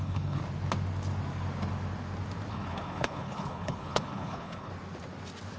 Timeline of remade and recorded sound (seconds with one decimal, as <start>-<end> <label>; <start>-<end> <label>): 0.0-0.4 remade; 0.4-2.5 recorded; 2.5-4.7 remade; 4.7-5.6 recorded